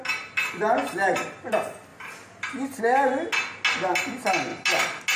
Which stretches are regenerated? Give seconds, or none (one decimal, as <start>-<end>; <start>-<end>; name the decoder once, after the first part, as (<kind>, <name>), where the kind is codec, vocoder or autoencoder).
0.4-1.5 (vocoder, BigVGAN v2); 1.9-2.8